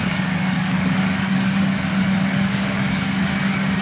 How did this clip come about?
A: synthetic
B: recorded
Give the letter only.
A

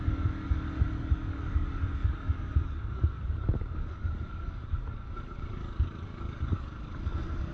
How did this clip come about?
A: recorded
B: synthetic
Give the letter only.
B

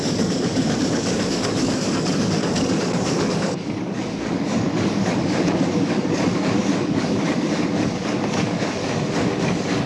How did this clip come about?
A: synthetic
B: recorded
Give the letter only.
A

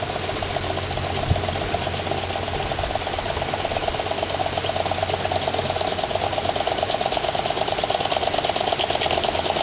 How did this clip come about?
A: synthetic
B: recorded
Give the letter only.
B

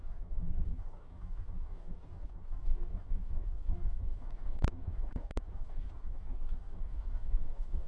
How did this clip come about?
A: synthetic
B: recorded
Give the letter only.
A